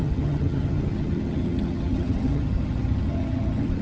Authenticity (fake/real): fake